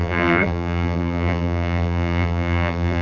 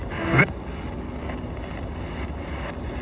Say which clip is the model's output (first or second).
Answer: first